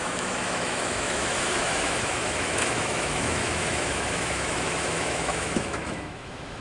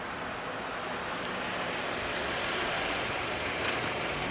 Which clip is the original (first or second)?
second